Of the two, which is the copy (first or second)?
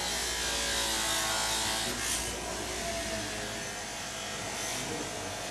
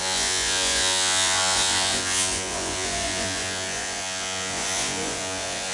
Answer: second